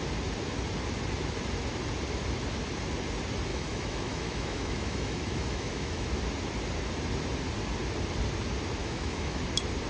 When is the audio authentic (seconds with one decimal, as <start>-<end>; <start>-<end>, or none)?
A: 0.0-3.5; 6.1-8.8; 9.4-9.9